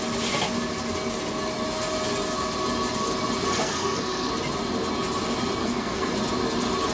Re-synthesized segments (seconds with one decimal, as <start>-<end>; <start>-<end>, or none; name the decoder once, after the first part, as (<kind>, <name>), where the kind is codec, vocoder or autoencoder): 3.5-4.3 (codec, SNAC); 5.6-6.1